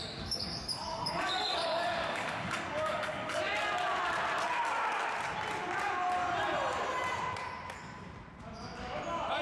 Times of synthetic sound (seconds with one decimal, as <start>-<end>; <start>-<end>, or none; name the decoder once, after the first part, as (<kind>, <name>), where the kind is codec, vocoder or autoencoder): 0.0-3.4 (codec, DAC)